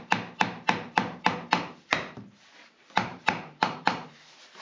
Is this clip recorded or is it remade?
remade